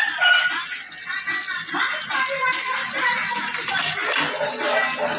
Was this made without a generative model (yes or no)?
yes